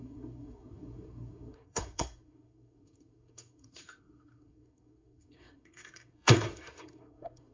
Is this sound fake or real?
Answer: fake